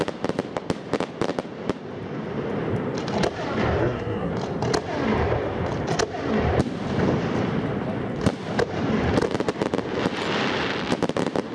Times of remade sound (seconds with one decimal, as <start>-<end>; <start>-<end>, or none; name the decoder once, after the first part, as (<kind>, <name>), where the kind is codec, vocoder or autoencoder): 3.8-4.3 (codec, SNAC)